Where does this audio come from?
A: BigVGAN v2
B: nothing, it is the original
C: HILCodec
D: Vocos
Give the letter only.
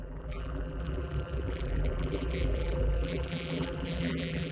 A